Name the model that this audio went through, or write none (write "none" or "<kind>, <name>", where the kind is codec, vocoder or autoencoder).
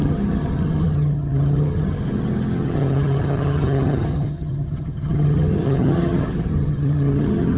vocoder, HiFi-GAN